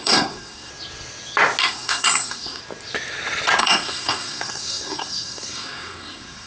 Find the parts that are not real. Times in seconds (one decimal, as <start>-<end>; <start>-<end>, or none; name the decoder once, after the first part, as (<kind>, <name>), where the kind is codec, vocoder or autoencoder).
0.0-0.7 (codec, SNAC); 1.6-2.6; 3.6-6.5